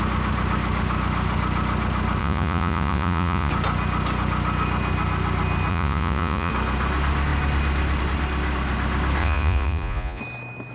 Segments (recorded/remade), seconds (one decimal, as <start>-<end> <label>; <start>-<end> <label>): 0.0-2.2 recorded; 2.2-3.5 remade; 3.5-5.7 recorded; 5.7-6.5 remade; 6.5-9.2 recorded; 9.2-10.2 remade; 10.2-10.7 recorded